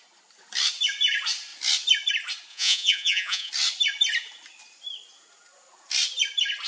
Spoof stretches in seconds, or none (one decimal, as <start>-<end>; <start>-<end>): 2.5-3.5